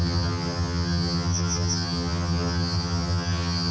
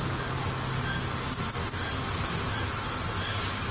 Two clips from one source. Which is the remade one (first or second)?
first